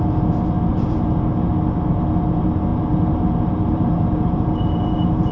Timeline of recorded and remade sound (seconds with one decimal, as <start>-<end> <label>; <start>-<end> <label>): 0.0-0.7 recorded; 0.7-1.5 remade; 1.5-2.7 recorded; 2.7-5.3 remade